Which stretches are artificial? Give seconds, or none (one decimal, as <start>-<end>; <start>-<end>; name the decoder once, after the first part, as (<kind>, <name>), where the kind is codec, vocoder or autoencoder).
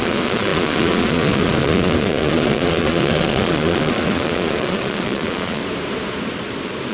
0.0-5.6 (vocoder, Vocos)